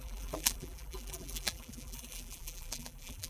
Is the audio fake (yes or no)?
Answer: yes